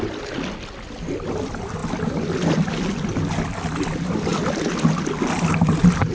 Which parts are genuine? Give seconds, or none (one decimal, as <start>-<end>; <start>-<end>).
0.0-6.1